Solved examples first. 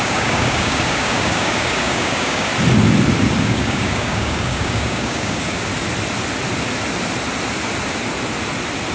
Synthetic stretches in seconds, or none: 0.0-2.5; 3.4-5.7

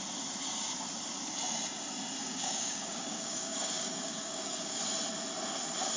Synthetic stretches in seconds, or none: 2.2-4.8

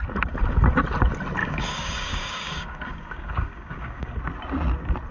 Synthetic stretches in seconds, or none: 1.4-4.2

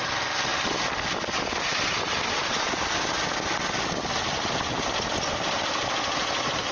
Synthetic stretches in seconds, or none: none

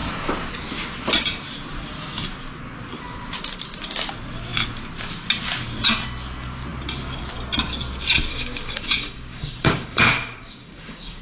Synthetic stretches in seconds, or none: 8.3-11.2

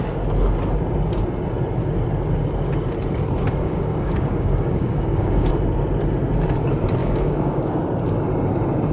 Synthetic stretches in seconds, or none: 3.6-5.5; 7.0-7.8